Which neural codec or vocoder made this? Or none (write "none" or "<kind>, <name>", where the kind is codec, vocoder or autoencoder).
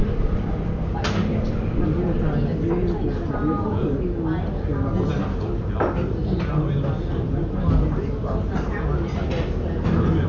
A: none